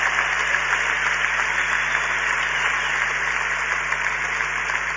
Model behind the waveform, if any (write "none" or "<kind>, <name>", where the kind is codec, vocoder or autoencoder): none